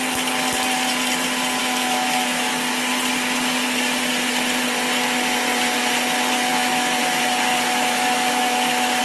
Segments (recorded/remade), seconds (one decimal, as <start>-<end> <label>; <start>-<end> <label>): 0.0-1.6 recorded; 1.6-2.5 remade; 2.5-6.5 recorded; 6.5-7.0 remade; 7.0-7.5 recorded; 7.5-9.0 remade